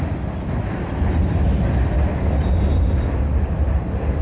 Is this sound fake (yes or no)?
no